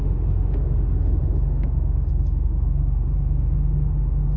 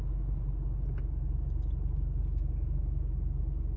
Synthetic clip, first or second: first